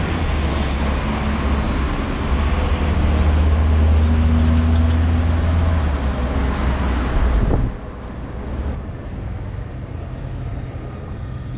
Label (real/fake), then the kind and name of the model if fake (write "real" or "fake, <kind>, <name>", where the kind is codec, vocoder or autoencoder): real